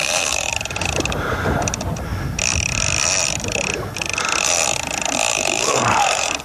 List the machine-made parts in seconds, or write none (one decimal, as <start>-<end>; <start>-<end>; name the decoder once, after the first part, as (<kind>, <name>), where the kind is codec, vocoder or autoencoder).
0.0-0.5 (vocoder, BigVGAN v2); 5.3-6.4